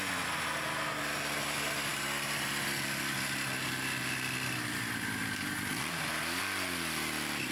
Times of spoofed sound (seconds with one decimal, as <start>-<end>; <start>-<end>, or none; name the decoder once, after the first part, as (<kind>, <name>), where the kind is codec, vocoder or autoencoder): none